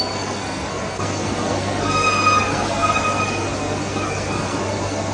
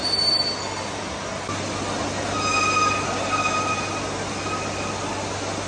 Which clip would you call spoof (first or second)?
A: first